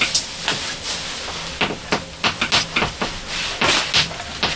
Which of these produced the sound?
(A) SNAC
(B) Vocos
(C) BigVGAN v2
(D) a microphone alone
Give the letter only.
D